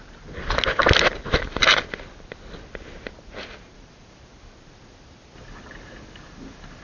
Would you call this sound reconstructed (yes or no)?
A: no